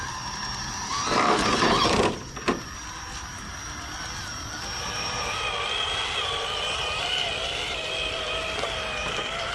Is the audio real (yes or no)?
yes